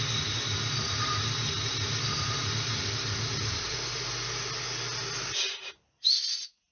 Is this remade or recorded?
recorded